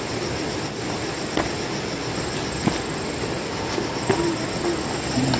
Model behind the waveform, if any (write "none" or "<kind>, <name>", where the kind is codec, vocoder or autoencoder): none